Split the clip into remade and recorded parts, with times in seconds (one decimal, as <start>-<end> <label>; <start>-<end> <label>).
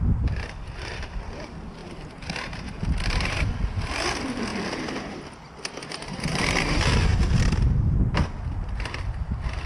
0.0-1.8 recorded; 1.8-2.8 remade; 2.8-9.7 recorded